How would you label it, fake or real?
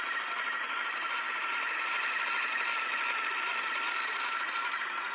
real